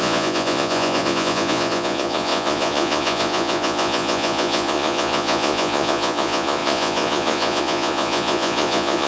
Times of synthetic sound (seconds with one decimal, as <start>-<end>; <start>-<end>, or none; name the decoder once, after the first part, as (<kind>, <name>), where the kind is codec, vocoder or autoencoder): 0.0-9.1 (vocoder, Vocos)